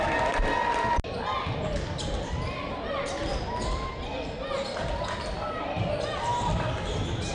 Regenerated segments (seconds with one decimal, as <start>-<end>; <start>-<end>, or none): none